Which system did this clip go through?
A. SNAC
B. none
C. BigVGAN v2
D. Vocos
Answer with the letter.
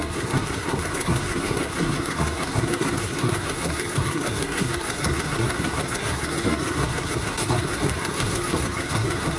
A